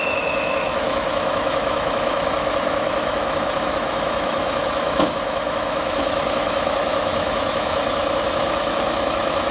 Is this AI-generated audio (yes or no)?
yes